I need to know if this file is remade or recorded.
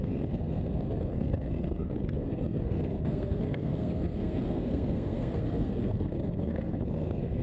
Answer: remade